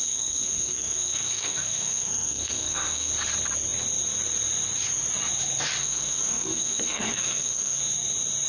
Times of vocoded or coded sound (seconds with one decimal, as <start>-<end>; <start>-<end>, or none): 0.0-3.1; 5.8-7.8